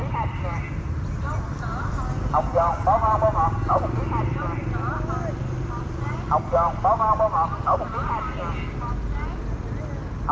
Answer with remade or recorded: recorded